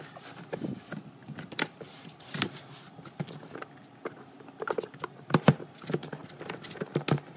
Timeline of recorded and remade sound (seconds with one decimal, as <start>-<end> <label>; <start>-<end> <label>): 0.0-1.2 recorded; 1.2-5.6 remade; 5.6-6.2 recorded; 6.2-6.8 remade; 6.8-7.4 recorded